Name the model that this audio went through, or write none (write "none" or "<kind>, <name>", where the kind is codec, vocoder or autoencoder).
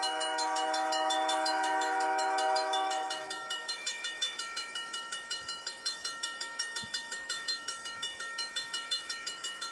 autoencoder, DAC-VAE